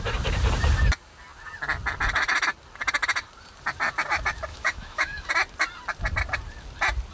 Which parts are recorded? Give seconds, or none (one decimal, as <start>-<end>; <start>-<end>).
0.0-4.5; 5.3-7.1